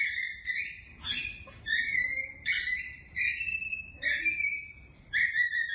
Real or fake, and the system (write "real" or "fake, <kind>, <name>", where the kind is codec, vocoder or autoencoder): fake, vocoder, BigVGAN v2